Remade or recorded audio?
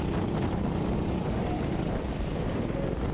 remade